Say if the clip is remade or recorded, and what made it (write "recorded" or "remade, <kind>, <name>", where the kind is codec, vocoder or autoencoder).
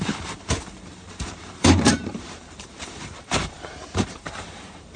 remade, vocoder, BigVGAN v2